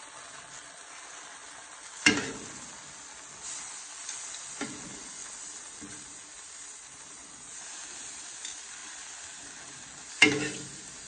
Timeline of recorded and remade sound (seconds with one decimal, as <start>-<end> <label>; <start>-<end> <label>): 0.0-11.1 recorded